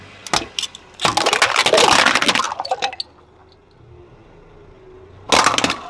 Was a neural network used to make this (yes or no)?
no